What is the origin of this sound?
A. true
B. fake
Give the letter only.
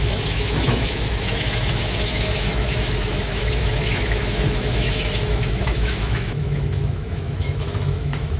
B